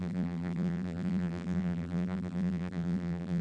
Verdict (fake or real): fake